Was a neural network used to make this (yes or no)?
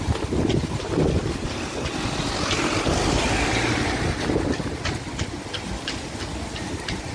no